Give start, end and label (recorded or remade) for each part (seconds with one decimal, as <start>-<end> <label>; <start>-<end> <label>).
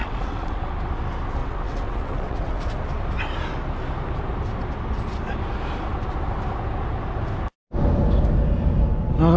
0.0-0.6 remade; 0.6-1.4 recorded; 1.4-2.6 remade; 2.6-9.4 recorded